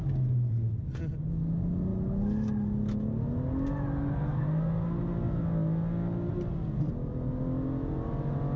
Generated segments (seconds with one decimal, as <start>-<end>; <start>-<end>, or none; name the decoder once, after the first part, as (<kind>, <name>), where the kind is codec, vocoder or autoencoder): none